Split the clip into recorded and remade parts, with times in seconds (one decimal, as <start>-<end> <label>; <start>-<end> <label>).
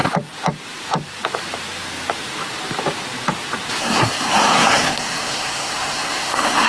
0.0-3.8 recorded; 3.8-6.7 remade